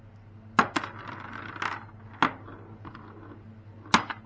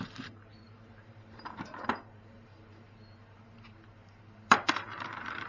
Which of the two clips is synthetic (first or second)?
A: second